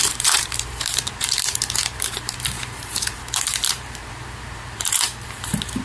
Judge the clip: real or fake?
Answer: fake